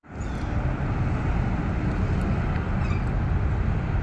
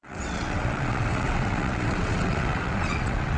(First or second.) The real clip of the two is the first